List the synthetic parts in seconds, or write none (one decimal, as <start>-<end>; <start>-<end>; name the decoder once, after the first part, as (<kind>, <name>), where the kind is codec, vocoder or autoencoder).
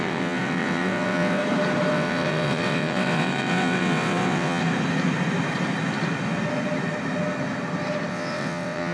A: 0.0-1.4 (vocoder, WaveNeXt); 1.9-4.6; 8.1-8.9